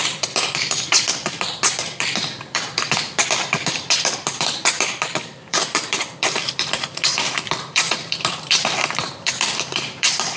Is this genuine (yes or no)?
no